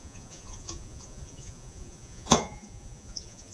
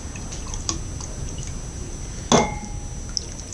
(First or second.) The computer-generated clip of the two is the first